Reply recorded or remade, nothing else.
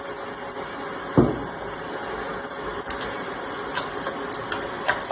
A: recorded